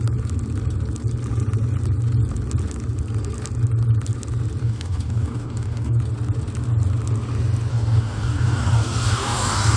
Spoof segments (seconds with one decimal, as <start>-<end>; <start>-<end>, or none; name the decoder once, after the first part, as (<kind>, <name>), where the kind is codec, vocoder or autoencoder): 4.6-6.0 (codec, DAC); 7.7-9.8